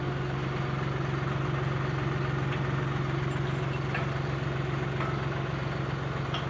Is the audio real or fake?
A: real